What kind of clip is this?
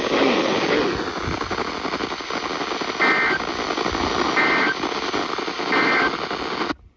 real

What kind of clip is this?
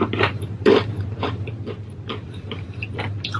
fake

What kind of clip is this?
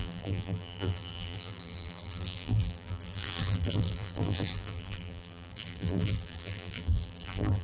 fake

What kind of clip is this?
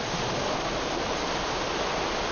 real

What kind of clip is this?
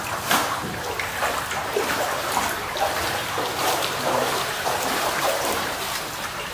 fake